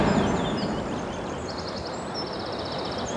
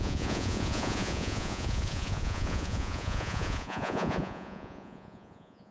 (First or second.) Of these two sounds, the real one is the first